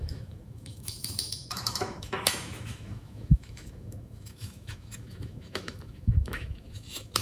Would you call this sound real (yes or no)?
no